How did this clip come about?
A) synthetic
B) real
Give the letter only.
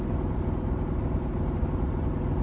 B